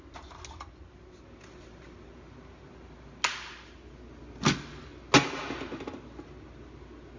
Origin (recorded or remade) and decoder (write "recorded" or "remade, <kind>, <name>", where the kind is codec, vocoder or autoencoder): recorded